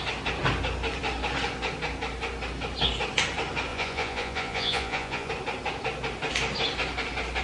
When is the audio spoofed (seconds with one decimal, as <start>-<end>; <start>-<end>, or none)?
3.7-5.3